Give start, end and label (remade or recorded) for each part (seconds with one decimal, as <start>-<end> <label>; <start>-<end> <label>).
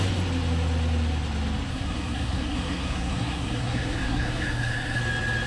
0.0-1.7 recorded; 1.7-5.0 remade; 5.0-5.5 recorded